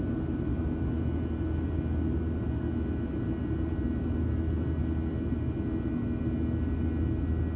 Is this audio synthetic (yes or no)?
no